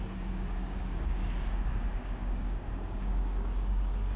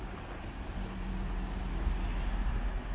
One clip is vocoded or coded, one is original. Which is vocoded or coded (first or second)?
first